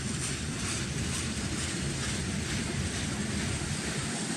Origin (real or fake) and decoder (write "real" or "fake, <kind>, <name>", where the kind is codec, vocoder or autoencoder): fake, vocoder, BigVGAN v2